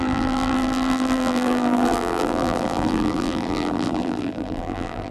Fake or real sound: fake